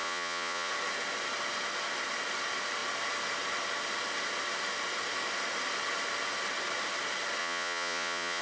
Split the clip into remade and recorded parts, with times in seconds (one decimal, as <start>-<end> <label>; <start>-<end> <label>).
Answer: 0.0-0.7 remade; 0.7-7.4 recorded; 7.4-8.4 remade